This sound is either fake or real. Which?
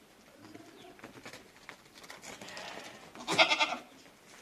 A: real